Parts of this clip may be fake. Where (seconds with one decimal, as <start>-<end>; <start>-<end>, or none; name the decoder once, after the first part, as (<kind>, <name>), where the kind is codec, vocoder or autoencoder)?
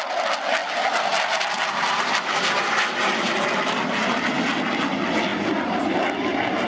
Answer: 5.3-5.9 (vocoder, BigVGAN v2)